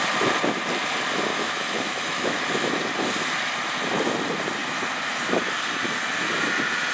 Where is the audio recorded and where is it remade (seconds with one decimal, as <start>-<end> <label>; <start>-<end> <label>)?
0.0-1.3 recorded; 1.3-2.4 remade; 2.4-6.9 recorded